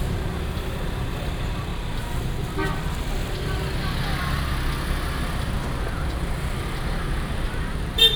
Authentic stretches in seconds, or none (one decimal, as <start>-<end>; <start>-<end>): 1.7-6.6

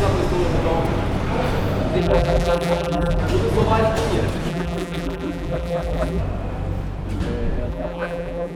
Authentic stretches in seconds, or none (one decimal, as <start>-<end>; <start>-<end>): 0.0-2.0; 3.2-4.5; 6.2-7.7

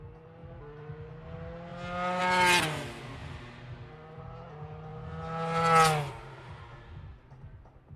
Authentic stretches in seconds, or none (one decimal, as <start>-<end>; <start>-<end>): 0.0-8.0

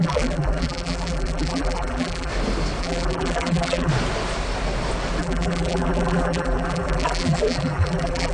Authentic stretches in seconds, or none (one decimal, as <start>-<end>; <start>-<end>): 2.3-2.8; 3.9-5.2

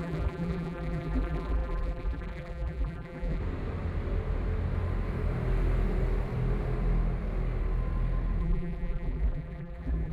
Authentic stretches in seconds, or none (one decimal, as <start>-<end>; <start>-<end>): 3.4-8.4

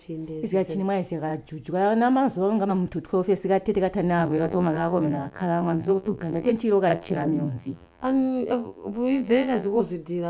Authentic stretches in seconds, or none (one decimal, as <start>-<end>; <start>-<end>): 0.0-4.2; 6.5-6.9; 9.8-10.3

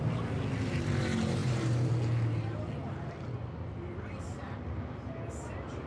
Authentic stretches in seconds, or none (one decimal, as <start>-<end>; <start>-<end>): 0.0-1.4; 1.9-5.9